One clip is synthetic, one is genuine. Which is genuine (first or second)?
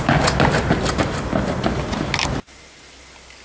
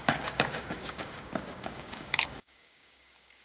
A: first